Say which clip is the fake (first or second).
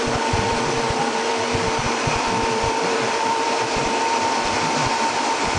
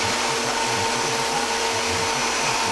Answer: first